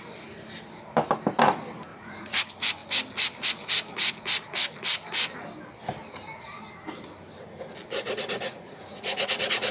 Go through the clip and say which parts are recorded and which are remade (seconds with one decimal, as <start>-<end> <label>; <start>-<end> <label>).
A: 0.0-1.9 recorded; 1.9-2.4 remade; 2.4-8.1 recorded; 8.1-9.7 remade